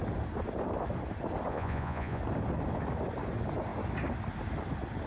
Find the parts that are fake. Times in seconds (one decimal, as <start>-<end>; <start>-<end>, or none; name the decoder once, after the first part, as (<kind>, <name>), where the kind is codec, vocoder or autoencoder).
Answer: 1.5-2.2 (vocoder, Vocos)